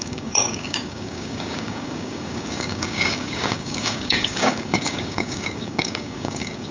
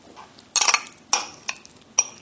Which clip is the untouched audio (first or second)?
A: second